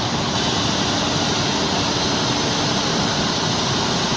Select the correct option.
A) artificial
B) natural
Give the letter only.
B